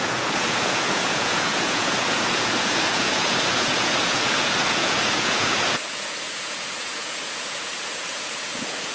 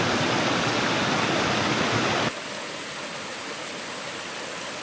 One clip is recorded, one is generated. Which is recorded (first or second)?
second